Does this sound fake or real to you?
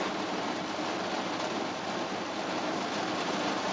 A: real